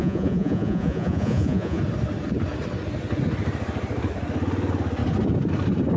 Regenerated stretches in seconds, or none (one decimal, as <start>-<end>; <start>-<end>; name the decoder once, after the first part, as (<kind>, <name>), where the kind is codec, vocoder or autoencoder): 0.0-1.8 (vocoder, Vocos)